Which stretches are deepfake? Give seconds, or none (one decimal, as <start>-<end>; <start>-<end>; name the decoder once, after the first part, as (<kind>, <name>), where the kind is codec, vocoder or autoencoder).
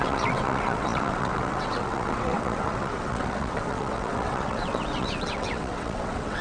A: 0.0-6.4 (vocoder, WaveNeXt)